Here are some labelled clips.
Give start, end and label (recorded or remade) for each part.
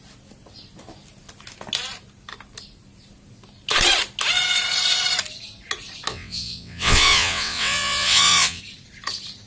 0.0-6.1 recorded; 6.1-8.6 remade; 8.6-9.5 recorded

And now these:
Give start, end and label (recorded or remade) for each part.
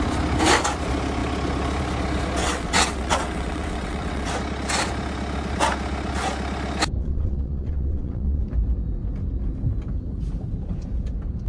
0.0-2.4 recorded; 2.4-4.3 remade; 4.3-7.0 recorded; 7.0-8.4 remade; 8.4-11.5 recorded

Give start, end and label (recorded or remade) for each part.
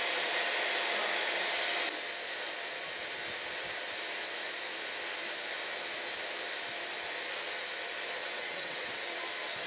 0.0-8.2 recorded; 8.2-9.2 remade; 9.2-9.7 recorded